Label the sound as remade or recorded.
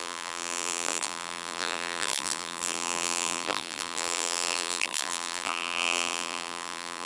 remade